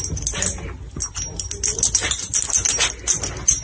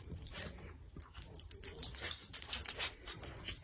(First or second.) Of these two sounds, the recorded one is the first